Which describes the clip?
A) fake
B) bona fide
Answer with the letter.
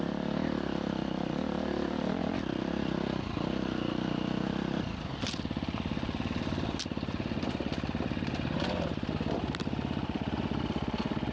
B